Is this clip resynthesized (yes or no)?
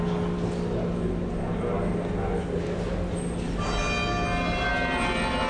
no